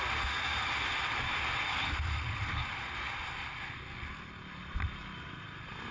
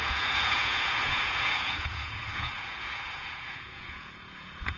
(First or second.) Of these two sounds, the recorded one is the first